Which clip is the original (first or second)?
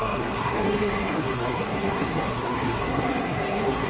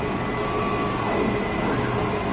second